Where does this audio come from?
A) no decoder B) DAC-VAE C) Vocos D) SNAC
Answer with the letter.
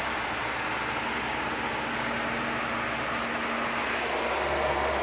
A